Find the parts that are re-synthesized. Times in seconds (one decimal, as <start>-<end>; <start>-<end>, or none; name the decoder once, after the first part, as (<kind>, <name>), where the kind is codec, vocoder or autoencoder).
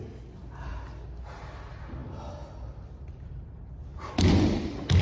none